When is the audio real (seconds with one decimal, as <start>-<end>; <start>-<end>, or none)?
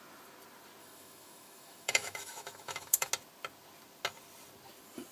0.0-0.8; 3.1-5.1